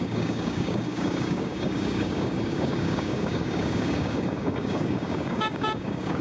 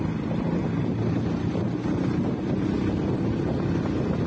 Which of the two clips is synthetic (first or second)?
first